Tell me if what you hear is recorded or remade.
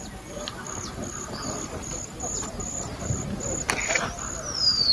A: recorded